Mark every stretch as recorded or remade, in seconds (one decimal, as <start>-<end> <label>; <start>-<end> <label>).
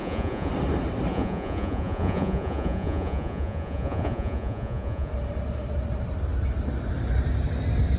0.0-0.5 remade; 0.5-1.1 recorded; 1.1-5.1 remade; 5.1-8.0 recorded